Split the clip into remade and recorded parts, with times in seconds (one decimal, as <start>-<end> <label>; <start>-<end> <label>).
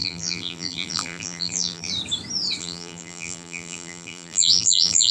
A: 0.0-1.9 remade; 1.9-2.6 recorded; 2.6-5.1 remade